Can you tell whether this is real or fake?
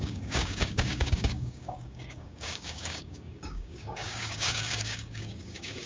fake